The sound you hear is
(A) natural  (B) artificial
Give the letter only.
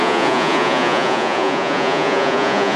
B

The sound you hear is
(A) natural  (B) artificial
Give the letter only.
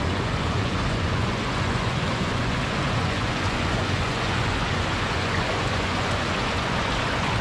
B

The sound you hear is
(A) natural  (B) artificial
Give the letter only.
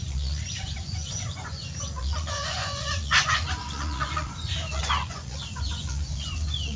B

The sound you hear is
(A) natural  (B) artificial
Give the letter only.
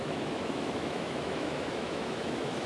B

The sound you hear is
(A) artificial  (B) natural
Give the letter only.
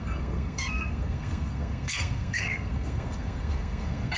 A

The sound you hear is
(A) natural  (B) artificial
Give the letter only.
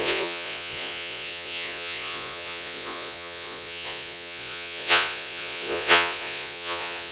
B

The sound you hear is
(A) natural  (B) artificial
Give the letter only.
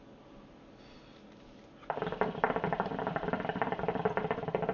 A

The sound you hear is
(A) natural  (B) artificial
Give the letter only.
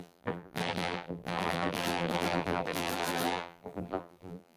B